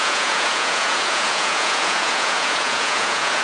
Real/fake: fake